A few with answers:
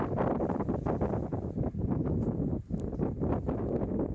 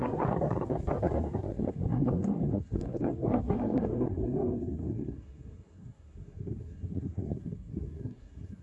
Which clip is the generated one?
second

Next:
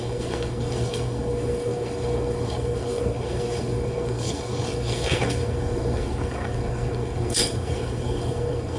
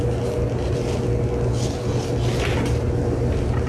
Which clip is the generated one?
first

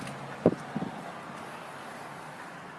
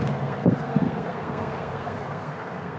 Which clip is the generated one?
second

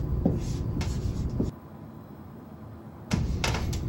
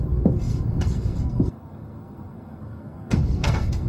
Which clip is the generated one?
second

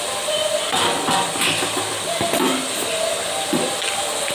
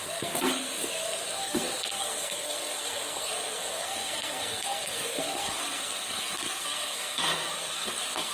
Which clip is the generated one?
second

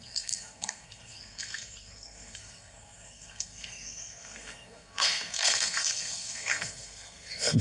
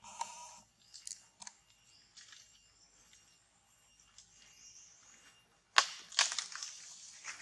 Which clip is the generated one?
first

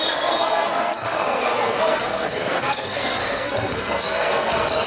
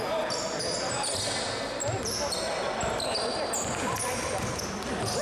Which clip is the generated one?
first